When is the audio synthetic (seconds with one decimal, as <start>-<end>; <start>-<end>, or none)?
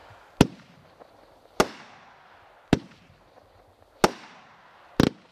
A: none